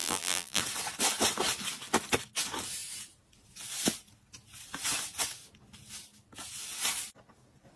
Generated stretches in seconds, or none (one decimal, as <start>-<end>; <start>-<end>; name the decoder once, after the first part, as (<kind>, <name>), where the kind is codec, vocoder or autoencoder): 0.0-0.6 (vocoder, BigVGAN v2)